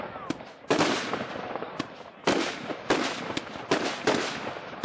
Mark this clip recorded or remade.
recorded